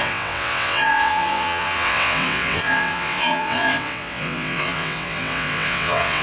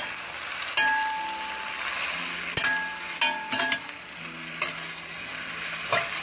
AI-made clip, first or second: first